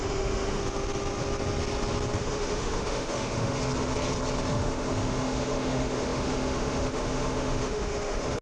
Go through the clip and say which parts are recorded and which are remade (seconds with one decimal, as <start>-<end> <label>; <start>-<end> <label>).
0.0-0.6 remade; 0.6-2.2 recorded; 2.2-3.6 remade; 3.6-4.4 recorded; 4.4-8.4 remade